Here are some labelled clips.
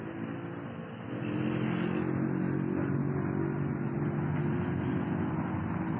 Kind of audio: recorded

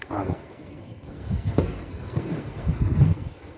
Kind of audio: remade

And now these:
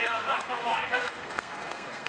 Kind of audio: remade